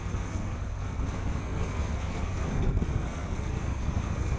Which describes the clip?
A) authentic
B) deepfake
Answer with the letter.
B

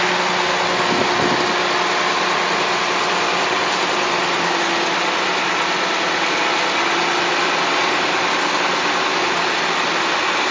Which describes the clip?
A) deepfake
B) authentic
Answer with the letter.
B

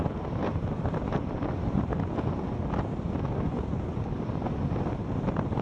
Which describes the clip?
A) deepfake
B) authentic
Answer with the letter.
B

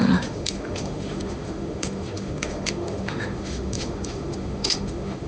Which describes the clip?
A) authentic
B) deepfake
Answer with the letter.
B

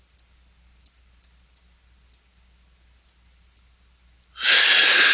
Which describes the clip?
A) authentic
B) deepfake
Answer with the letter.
A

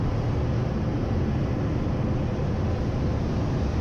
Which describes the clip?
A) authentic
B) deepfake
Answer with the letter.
A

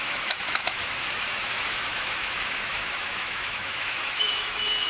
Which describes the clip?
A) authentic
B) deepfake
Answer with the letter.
B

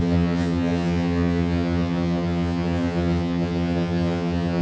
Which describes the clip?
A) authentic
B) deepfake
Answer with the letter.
B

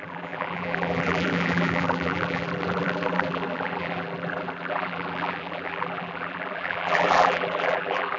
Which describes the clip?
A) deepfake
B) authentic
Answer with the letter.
A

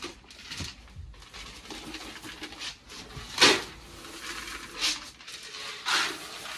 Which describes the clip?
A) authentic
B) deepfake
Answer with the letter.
A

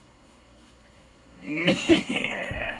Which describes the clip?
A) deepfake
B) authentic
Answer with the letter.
A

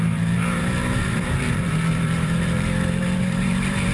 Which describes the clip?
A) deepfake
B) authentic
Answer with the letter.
A